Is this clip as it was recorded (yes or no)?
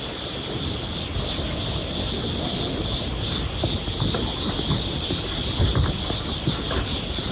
yes